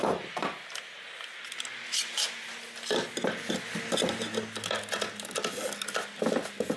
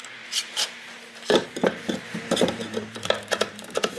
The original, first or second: first